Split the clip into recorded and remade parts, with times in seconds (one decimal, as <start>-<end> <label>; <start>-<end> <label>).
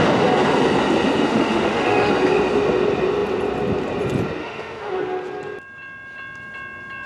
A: 0.0-1.3 recorded; 1.3-2.1 remade; 2.1-4.4 recorded; 4.4-5.0 remade; 5.0-7.1 recorded